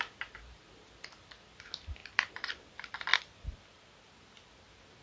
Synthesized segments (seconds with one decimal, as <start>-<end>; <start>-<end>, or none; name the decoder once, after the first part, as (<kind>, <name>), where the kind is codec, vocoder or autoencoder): 2.0-2.7 (vocoder, BigVGAN v2)